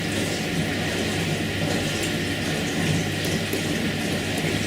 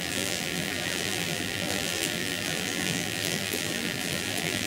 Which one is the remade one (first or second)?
second